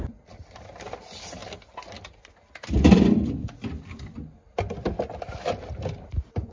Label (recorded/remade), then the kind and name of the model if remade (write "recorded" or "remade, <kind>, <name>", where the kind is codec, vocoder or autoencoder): recorded